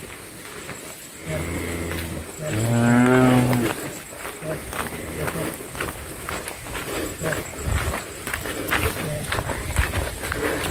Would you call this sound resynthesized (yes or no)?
no